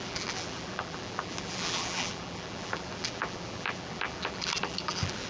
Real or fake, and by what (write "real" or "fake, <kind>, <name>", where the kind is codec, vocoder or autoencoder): fake, vocoder, BigVGAN v2